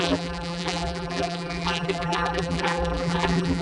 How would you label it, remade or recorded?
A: remade